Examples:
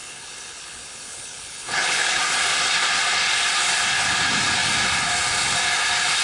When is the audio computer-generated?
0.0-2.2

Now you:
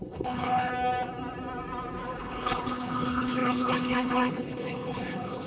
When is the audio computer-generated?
0.0-0.7; 2.2-5.5

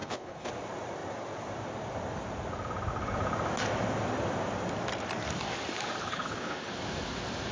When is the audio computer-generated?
0.0-0.5; 6.0-6.7

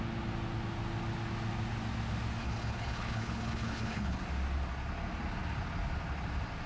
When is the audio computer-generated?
2.4-4.2

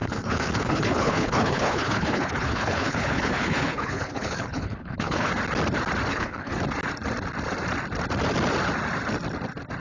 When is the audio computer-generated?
0.0-5.3; 6.1-6.6